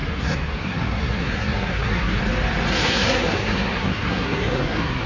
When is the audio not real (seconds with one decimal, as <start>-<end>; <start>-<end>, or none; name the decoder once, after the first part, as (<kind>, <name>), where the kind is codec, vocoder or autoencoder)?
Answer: 0.0-2.2 (codec, SNAC); 2.7-5.1